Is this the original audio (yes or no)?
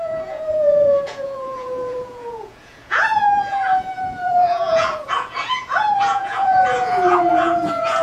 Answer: no